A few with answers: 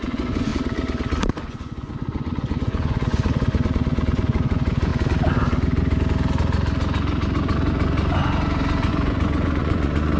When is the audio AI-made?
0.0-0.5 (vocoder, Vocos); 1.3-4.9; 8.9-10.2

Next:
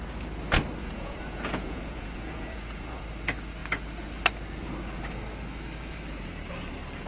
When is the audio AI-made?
0.8-3.0 (vocoder, Vocos)

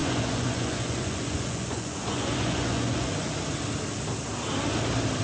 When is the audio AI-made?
0.0-3.1 (vocoder, Vocos)

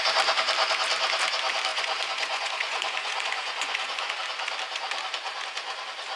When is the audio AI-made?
1.7-4.1 (vocoder, Vocos)

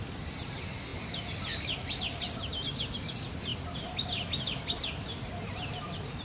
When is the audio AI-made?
none